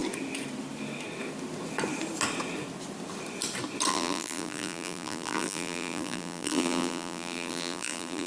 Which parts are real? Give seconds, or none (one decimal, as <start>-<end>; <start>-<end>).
0.0-3.9